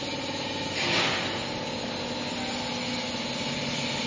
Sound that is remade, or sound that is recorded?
recorded